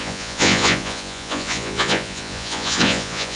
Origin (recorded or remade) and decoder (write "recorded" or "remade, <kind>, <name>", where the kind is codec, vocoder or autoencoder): remade, vocoder, Vocos